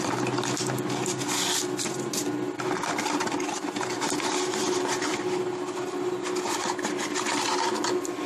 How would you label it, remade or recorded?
recorded